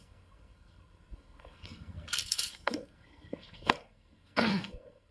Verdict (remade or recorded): remade